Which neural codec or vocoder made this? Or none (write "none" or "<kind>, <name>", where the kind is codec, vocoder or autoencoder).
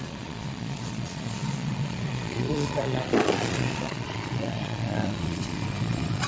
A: vocoder, Vocos